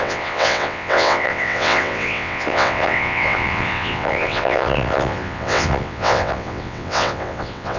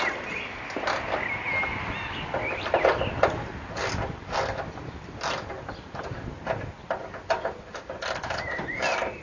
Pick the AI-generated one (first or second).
first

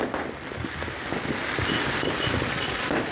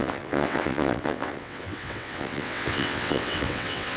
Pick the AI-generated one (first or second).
second